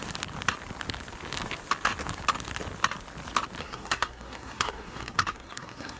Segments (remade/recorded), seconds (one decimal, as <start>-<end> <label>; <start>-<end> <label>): 0.0-3.6 recorded; 3.6-6.0 remade